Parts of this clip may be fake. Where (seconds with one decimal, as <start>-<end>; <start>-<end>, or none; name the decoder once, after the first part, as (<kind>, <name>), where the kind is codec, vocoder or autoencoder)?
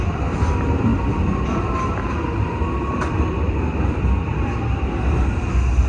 none